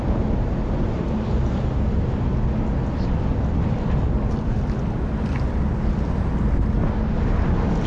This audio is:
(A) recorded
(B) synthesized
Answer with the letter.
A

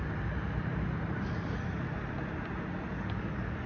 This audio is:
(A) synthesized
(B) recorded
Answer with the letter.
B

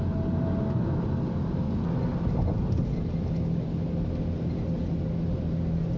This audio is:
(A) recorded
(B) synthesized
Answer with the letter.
A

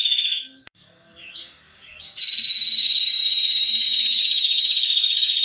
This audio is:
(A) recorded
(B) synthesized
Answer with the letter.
B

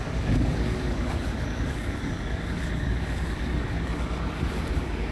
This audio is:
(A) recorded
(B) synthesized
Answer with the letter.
B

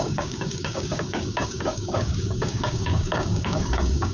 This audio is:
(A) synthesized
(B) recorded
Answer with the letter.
A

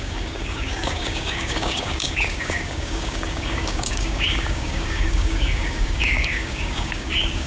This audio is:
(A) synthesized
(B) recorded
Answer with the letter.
A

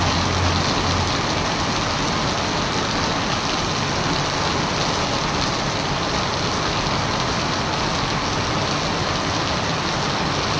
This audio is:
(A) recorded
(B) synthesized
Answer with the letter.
A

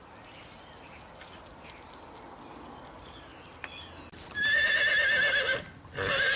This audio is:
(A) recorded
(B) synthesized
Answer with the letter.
A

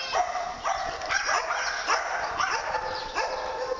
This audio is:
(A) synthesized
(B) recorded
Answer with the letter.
B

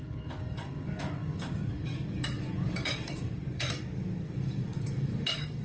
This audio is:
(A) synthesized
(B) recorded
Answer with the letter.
A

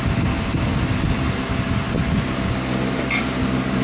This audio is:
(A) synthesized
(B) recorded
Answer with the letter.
B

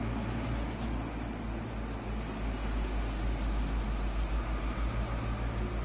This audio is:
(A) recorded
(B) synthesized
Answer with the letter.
A